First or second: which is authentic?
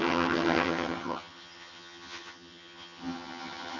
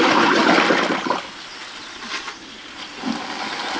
second